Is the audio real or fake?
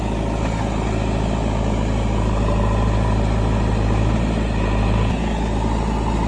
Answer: real